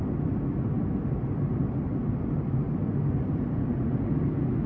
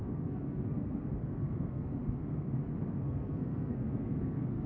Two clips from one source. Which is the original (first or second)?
first